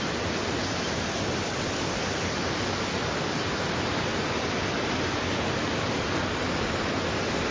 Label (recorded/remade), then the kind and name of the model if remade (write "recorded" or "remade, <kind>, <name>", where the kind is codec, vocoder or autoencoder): recorded